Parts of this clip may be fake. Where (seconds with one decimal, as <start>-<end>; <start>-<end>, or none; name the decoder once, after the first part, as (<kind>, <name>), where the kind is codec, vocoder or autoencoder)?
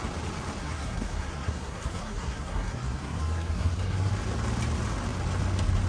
0.6-4.1 (codec, SNAC)